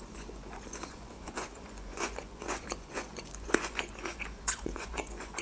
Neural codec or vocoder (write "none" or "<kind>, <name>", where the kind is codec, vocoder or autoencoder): vocoder, Vocos